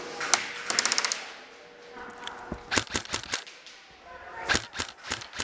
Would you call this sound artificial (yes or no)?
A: no